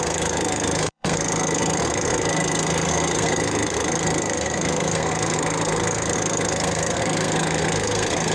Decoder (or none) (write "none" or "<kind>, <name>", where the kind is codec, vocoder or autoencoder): codec, SNAC